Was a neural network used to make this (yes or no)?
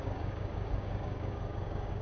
yes